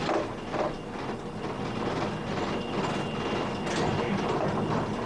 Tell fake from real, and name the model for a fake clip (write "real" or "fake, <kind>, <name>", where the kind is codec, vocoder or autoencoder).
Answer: real